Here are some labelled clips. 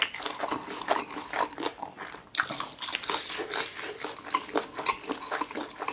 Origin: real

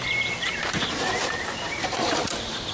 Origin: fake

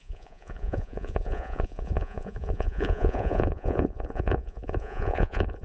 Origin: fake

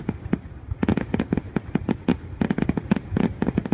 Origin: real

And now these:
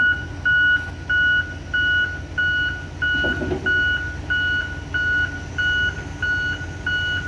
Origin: real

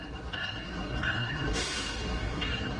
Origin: fake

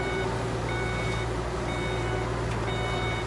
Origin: real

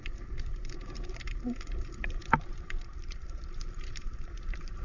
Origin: fake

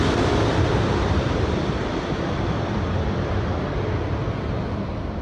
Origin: fake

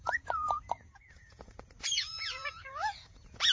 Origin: fake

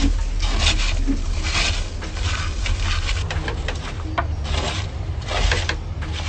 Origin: real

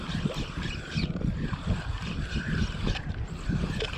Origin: real